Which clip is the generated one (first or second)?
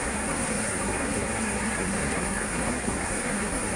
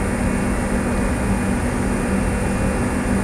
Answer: first